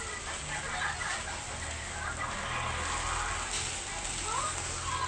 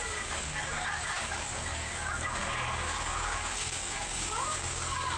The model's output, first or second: second